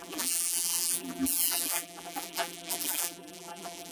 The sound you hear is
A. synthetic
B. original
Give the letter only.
A